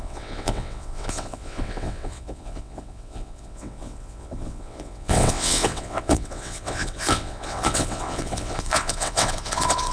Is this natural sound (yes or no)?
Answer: no